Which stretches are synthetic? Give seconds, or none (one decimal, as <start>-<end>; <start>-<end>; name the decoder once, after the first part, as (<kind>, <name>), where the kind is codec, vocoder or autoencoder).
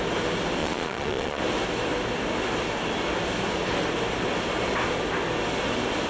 0.6-1.4 (vocoder, Vocos)